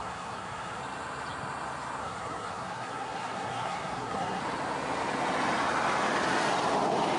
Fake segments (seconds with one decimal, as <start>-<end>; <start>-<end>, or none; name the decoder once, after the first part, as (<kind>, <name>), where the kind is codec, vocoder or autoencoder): 0.0-0.8 (codec, SNAC); 2.0-4.4